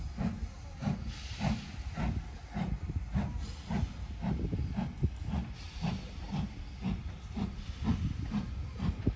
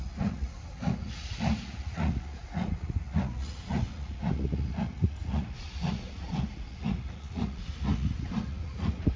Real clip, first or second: first